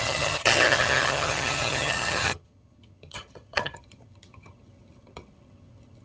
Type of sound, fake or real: fake